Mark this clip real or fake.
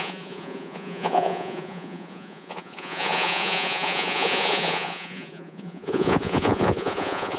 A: fake